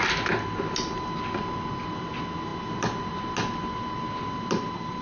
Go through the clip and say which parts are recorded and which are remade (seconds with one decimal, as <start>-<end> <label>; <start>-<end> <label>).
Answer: 0.0-5.0 recorded